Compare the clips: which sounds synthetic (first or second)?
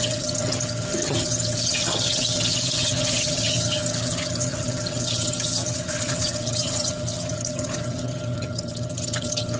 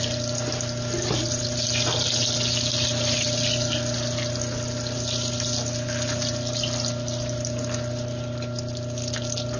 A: first